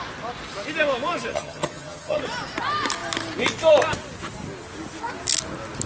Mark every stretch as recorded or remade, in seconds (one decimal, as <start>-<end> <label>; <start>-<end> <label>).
0.0-1.3 recorded; 1.3-2.2 remade; 2.2-5.9 recorded